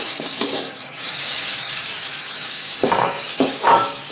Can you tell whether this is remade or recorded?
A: remade